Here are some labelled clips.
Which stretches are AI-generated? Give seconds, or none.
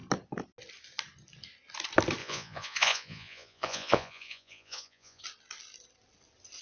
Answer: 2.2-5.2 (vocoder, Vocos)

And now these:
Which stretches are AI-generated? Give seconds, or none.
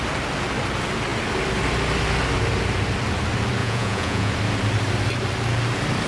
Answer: 3.6-4.3 (vocoder, Vocos)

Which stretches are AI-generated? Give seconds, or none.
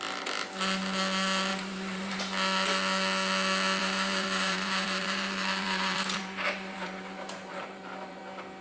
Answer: 1.5-2.2 (vocoder, BigVGAN v2); 3.8-8.2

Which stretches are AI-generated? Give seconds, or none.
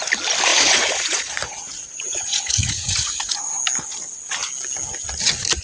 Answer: 0.5-3.6 (vocoder, Vocos)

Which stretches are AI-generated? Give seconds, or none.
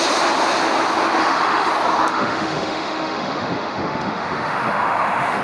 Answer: 1.2-1.7 (autoencoder, DAC-VAE); 2.1-5.4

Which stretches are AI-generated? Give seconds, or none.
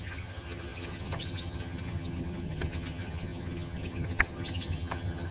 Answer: 0.0-5.3 (vocoder, HiFi-GAN)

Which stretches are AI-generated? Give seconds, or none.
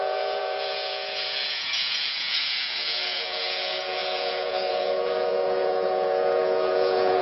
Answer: 0.0-7.2 (vocoder, Vocos)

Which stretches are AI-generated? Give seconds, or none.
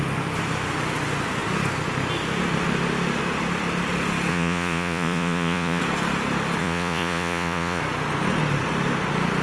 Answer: 4.3-5.8 (vocoder, Vocos); 6.6-7.8